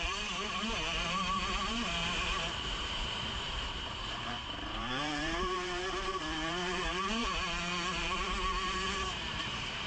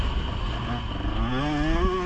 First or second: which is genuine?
second